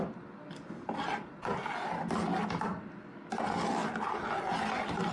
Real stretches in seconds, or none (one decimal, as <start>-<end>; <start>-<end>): 0.0-5.1